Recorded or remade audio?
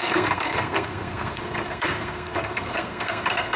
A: remade